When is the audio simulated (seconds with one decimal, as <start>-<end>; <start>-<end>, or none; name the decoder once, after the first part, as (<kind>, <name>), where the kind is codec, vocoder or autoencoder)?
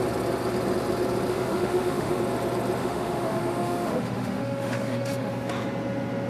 1.3-2.2 (autoencoder, DAC-VAE); 2.8-5.3